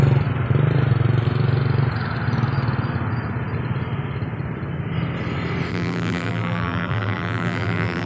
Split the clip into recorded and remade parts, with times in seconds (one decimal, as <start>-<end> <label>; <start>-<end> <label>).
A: 0.0-5.7 recorded; 5.7-8.1 remade